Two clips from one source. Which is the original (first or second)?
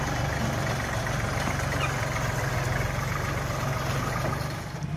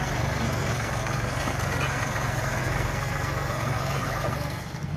first